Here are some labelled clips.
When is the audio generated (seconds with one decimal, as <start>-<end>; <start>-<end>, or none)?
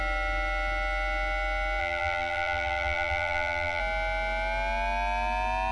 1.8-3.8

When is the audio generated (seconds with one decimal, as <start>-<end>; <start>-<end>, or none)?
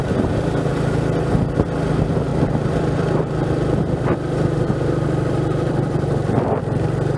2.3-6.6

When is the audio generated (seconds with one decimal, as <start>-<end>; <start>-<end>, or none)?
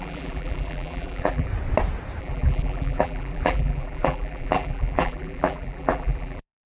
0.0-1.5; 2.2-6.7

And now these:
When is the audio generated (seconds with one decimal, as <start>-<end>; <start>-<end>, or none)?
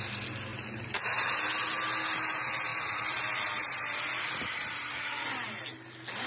2.7-5.2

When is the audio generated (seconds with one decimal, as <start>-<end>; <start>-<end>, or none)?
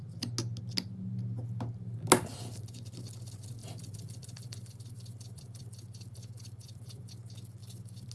3.6-7.1; 7.6-8.1